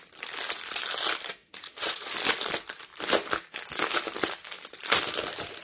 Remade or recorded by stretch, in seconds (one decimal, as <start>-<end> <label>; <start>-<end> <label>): 0.0-1.4 recorded; 1.4-2.1 remade; 2.1-5.6 recorded